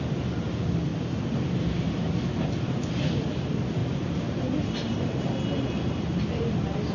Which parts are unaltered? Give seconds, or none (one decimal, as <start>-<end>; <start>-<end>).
0.0-6.9